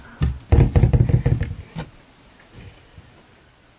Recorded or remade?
recorded